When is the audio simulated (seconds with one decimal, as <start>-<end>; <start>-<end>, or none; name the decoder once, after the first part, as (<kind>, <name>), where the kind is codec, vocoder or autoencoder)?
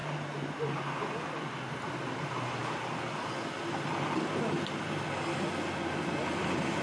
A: none